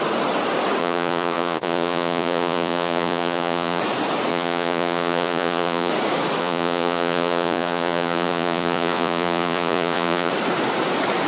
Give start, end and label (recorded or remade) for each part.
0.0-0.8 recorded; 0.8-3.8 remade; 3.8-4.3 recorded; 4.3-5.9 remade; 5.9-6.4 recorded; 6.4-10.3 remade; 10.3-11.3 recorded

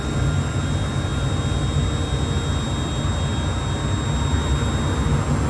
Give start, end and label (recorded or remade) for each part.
0.0-5.5 recorded

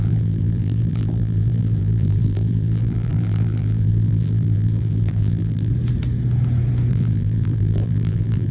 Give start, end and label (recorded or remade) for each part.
0.0-5.7 remade; 5.7-6.9 recorded; 6.9-8.5 remade

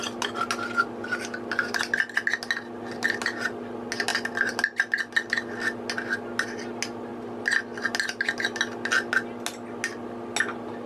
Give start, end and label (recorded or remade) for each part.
0.0-10.9 recorded

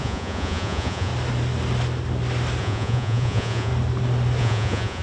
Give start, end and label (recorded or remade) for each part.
0.0-1.1 remade; 1.1-2.6 recorded; 2.6-3.7 remade; 3.7-4.4 recorded; 4.4-5.0 remade

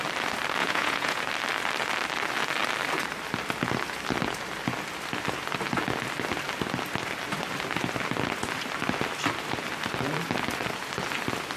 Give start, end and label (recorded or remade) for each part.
0.0-0.6 recorded; 0.6-1.2 remade; 1.2-11.6 recorded